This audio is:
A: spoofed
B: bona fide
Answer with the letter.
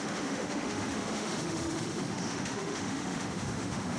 A